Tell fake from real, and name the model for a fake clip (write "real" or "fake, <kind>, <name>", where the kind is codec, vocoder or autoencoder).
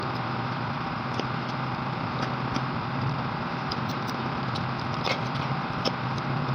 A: fake, vocoder, BigVGAN v2